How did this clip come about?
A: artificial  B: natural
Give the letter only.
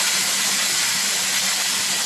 B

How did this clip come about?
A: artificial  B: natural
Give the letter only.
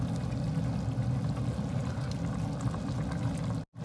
B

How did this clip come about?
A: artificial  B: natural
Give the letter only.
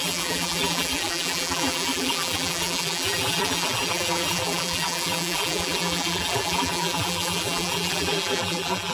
A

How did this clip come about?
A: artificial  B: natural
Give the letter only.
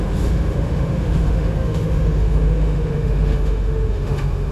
A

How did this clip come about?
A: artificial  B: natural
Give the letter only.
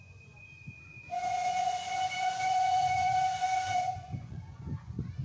A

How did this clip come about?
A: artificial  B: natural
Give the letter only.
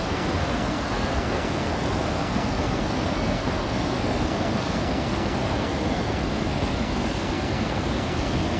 A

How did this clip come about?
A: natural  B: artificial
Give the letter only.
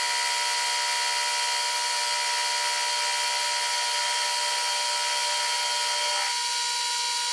A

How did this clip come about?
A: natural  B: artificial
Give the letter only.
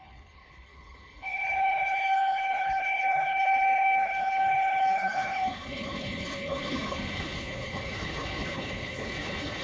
B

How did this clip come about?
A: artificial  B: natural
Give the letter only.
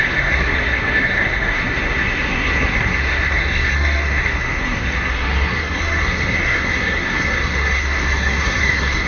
A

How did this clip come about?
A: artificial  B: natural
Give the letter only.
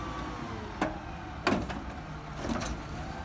B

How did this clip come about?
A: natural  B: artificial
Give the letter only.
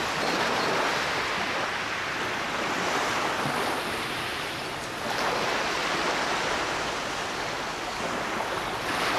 A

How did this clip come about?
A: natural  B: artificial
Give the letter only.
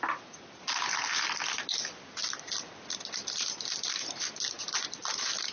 A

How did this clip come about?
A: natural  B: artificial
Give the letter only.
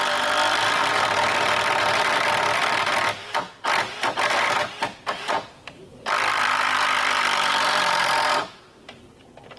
B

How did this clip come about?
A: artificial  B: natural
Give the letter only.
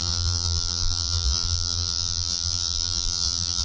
A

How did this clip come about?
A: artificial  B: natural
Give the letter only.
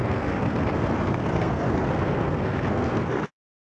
A